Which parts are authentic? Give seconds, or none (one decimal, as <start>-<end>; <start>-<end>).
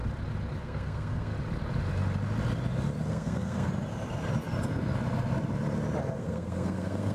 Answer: 0.0-0.6; 1.3-3.1; 3.7-6.1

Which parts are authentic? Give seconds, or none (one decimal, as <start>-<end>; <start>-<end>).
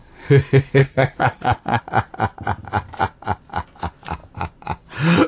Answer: 0.0-0.8; 1.8-5.3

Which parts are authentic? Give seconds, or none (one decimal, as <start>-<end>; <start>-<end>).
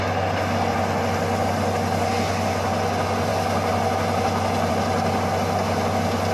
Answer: 0.0-6.3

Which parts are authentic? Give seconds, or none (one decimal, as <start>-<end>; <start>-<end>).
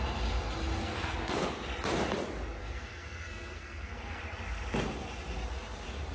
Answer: 0.0-0.8; 1.5-2.6; 4.2-6.1